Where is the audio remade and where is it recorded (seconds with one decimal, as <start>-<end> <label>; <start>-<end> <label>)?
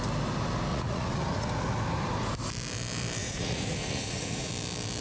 0.0-0.7 recorded; 0.7-1.5 remade; 1.5-3.2 recorded; 3.2-4.5 remade; 4.5-5.0 recorded